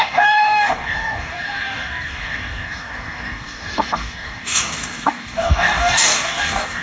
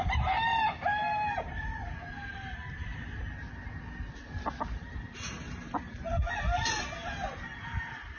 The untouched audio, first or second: second